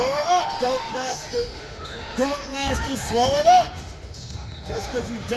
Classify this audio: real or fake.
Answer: fake